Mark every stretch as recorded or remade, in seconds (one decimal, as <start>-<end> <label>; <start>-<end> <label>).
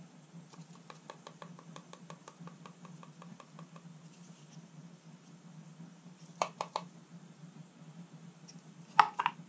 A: 0.0-9.5 recorded